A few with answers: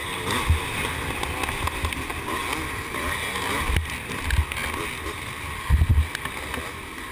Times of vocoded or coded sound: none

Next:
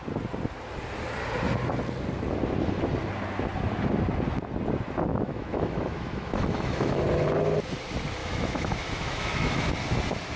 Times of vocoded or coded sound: 5.1-7.0 (autoencoder, DAC-VAE); 8.2-9.6

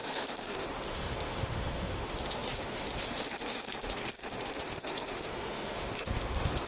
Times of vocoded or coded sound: 0.0-6.7 (autoencoder, DAC-VAE)

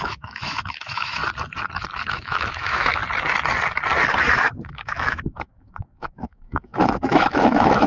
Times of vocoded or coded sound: 0.0-1.2 (autoencoder, DAC-VAE); 2.1-3.0; 4.4-7.9